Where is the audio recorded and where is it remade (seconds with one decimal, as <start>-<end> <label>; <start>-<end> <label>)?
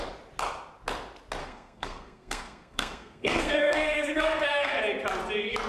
0.0-1.4 recorded; 1.4-4.8 remade; 4.8-5.7 recorded